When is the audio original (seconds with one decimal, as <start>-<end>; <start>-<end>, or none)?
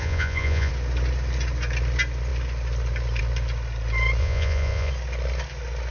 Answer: 0.7-4.2; 4.9-5.9